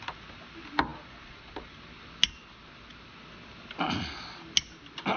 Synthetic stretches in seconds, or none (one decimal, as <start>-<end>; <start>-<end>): none